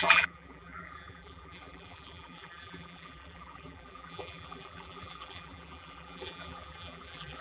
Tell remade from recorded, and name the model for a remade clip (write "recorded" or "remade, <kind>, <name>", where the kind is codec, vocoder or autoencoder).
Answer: remade, vocoder, BigVGAN v2